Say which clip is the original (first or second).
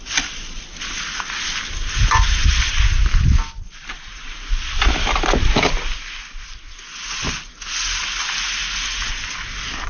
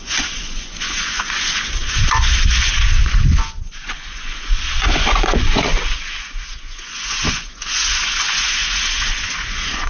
first